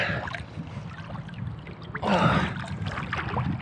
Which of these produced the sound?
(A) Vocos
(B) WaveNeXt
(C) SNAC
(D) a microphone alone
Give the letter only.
D